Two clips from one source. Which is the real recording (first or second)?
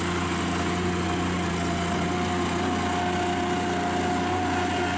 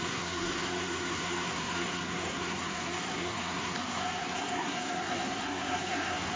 first